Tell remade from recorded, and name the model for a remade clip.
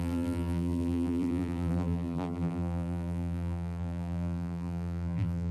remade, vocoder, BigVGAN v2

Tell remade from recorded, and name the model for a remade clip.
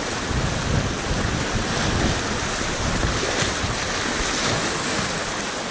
recorded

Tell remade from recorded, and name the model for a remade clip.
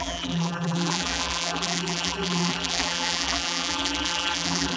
remade, vocoder, BigVGAN v2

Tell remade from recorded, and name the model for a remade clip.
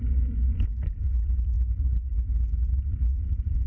recorded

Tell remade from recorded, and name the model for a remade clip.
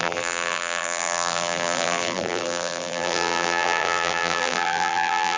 remade, vocoder, BigVGAN v2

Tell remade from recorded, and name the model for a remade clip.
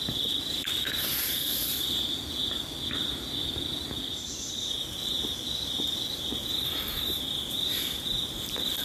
recorded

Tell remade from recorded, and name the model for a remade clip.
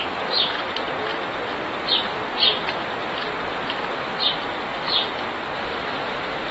recorded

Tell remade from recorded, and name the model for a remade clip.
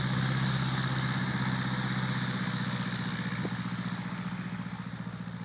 recorded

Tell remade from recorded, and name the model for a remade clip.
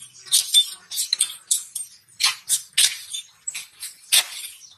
recorded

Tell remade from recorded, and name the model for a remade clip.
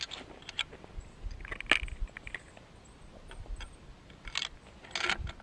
recorded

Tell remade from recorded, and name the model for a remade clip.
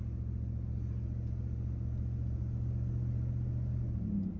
recorded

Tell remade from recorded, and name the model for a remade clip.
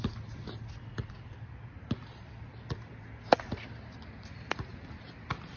recorded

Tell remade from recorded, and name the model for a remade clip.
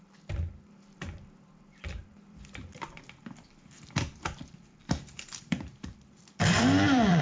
remade, vocoder, BigVGAN v2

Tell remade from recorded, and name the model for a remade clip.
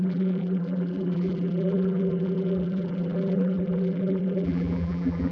remade, vocoder, BigVGAN v2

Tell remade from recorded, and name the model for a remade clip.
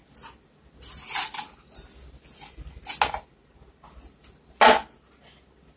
recorded